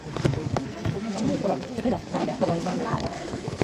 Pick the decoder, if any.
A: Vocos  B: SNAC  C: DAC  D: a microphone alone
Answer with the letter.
B